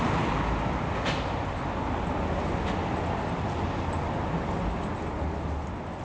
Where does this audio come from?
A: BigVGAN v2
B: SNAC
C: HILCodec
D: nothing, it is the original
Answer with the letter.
D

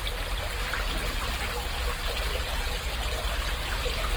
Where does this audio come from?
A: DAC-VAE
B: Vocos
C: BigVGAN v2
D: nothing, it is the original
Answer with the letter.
D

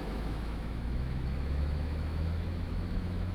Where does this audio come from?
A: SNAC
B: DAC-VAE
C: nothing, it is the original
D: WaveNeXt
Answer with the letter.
B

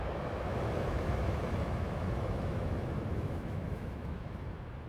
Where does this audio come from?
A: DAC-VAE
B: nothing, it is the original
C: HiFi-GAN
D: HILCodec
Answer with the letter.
A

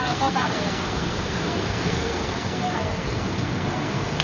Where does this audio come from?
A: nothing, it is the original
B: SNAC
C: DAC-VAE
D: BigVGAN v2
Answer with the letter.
B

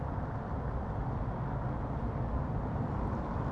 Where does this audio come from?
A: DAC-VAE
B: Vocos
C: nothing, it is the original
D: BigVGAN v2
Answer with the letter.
C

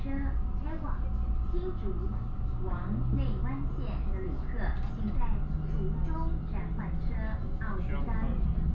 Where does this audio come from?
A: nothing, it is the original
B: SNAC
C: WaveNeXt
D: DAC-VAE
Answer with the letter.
A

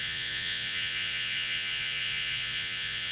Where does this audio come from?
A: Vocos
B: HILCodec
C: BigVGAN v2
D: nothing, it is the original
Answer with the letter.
A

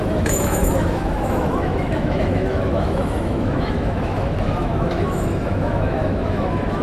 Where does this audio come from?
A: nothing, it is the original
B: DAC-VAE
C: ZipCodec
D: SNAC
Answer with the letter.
B